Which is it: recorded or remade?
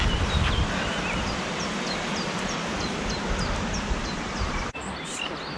recorded